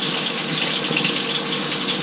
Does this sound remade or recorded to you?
recorded